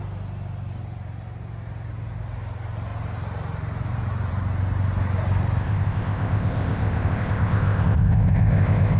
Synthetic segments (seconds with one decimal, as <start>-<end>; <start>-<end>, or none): 5.6-9.0